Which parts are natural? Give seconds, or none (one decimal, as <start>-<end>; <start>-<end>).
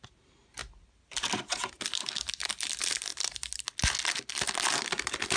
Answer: 0.0-5.4